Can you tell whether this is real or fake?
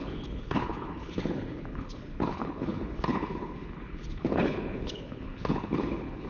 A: fake